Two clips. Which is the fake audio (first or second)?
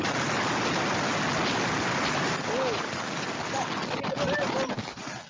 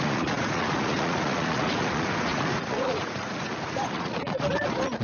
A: second